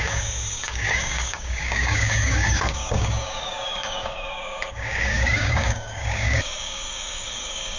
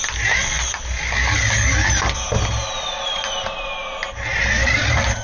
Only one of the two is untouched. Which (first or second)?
second